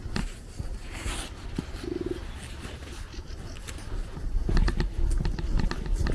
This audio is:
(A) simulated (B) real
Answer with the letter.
B